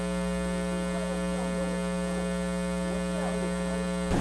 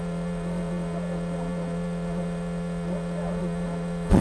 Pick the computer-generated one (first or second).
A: second